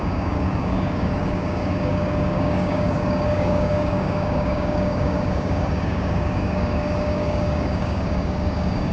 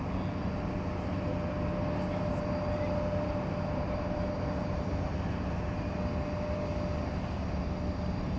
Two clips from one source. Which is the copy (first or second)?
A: first